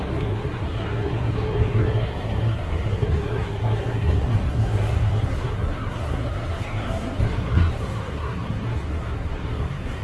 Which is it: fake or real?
fake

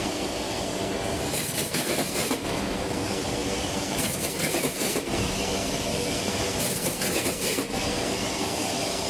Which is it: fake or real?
fake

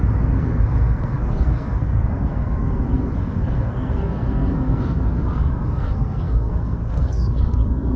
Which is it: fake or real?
fake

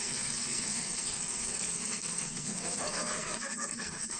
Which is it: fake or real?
fake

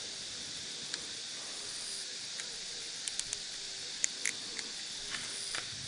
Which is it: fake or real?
real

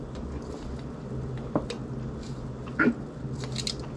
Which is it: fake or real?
real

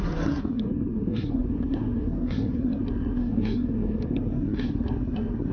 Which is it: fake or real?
fake